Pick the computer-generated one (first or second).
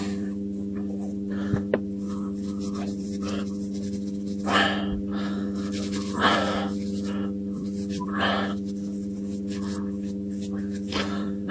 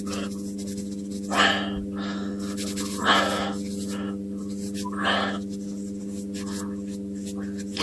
first